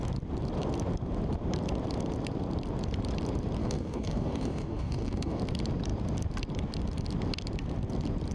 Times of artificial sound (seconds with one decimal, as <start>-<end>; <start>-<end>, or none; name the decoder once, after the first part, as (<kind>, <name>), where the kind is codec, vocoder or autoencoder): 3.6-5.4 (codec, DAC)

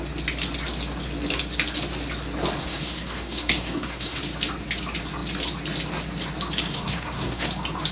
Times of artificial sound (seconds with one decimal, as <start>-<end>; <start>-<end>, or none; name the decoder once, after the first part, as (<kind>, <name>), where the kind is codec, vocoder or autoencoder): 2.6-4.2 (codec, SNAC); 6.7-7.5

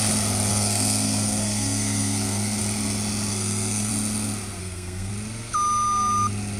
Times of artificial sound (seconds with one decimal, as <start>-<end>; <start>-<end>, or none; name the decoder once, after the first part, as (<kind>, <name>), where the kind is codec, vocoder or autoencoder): 0.5-2.6 (codec, SNAC); 3.3-3.9; 4.6-5.1